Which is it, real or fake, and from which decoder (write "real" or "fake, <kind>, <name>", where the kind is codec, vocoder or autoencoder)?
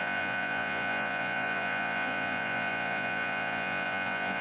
fake, vocoder, Vocos